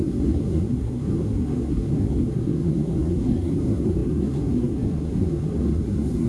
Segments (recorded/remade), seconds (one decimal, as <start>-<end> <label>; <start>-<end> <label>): 0.0-6.3 remade